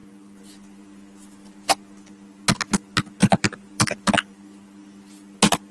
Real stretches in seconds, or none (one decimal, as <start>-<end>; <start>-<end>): 0.0-3.2; 4.1-5.7